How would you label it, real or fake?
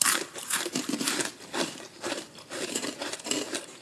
fake